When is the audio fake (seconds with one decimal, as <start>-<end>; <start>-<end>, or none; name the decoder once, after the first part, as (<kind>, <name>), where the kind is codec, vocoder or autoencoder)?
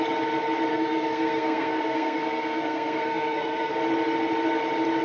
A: 0.7-3.7 (codec, SNAC)